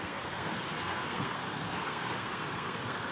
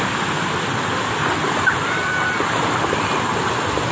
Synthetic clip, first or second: first